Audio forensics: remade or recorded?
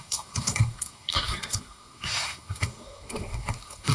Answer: remade